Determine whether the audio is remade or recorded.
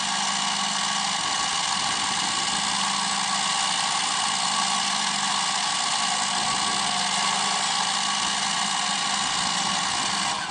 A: recorded